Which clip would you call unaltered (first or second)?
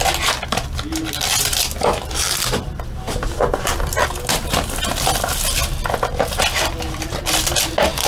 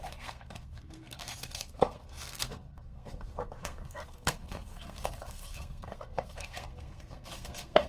first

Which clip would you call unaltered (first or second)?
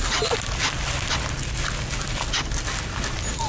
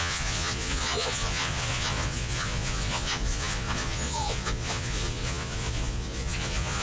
first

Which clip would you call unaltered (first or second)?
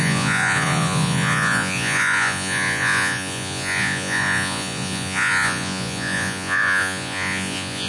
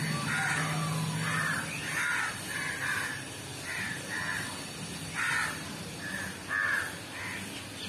second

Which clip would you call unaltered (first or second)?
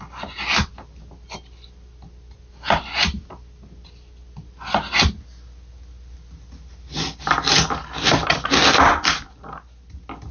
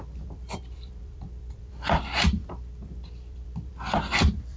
first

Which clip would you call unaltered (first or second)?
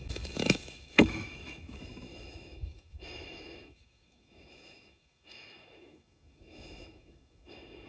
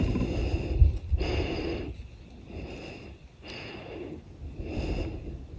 second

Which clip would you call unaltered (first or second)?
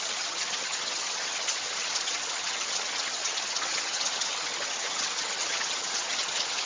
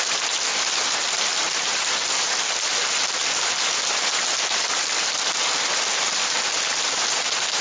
second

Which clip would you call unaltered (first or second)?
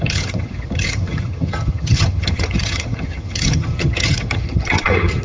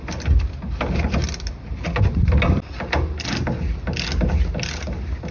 second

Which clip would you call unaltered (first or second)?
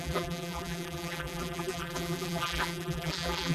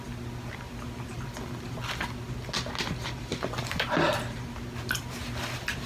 second